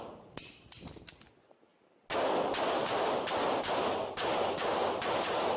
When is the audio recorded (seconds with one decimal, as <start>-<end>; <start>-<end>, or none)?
0.0-5.6